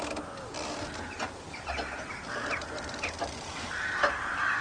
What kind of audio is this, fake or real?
real